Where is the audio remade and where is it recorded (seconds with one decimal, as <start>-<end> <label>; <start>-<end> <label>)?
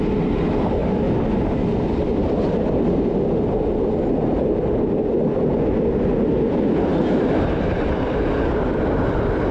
0.0-9.5 recorded